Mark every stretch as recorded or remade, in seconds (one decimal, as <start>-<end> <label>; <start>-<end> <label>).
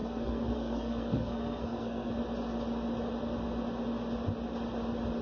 0.0-2.1 remade; 2.1-5.2 recorded